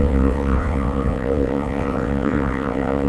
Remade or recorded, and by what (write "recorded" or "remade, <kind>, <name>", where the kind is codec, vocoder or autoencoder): remade, vocoder, WaveNeXt